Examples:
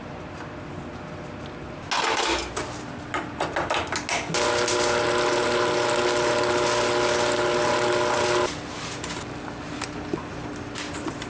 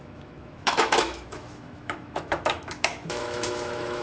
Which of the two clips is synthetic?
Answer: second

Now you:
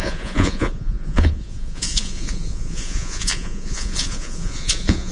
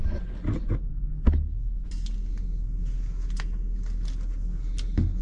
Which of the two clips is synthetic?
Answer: first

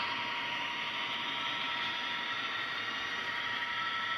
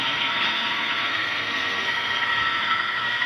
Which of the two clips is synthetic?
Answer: second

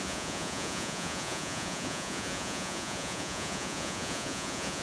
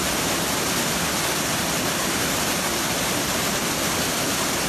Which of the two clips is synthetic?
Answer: first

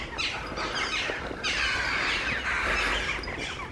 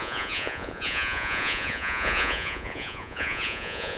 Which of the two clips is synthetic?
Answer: second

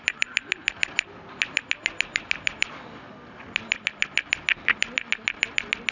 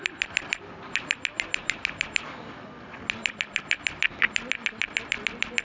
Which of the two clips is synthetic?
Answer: second